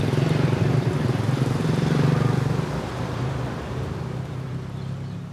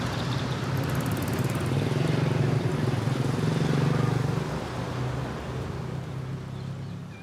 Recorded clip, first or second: second